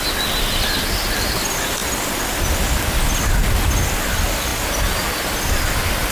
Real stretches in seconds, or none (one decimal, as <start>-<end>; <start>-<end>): 0.0-6.1